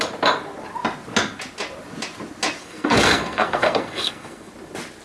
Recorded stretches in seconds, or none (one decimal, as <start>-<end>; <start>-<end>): 0.0-2.6; 4.5-5.0